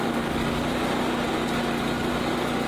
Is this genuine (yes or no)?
yes